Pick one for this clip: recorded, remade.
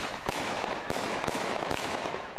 remade